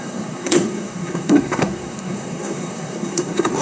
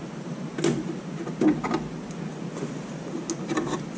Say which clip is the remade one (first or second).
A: first